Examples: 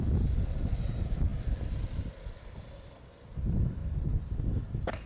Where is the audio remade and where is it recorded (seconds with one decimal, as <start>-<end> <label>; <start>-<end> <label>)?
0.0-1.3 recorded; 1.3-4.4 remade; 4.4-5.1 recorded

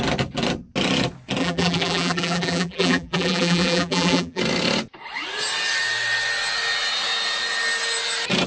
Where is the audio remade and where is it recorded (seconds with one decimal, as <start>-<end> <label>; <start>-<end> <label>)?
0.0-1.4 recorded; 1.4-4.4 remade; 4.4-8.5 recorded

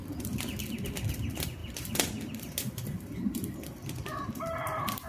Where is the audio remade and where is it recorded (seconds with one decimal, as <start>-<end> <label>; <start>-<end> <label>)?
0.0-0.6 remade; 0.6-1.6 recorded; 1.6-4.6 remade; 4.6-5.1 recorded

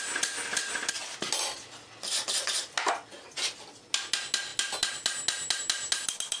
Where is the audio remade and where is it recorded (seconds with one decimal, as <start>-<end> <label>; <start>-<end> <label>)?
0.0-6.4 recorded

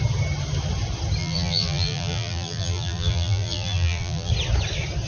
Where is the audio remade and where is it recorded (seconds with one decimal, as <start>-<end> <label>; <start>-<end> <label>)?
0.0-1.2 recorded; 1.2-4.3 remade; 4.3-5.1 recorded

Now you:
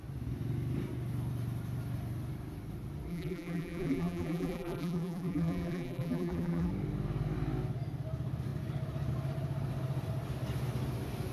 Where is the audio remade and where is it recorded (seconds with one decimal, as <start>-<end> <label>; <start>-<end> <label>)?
0.0-3.1 recorded; 3.1-6.7 remade; 6.7-11.3 recorded